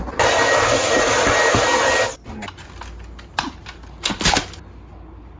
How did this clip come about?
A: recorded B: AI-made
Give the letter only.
A